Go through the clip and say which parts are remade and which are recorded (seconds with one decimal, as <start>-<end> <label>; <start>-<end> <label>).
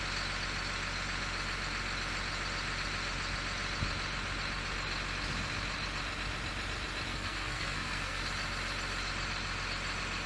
0.0-7.1 recorded; 7.1-8.2 remade; 8.2-10.3 recorded